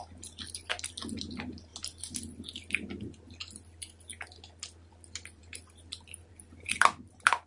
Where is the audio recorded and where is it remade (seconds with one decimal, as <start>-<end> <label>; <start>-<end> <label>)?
0.0-1.7 remade; 1.7-4.9 recorded; 4.9-7.5 remade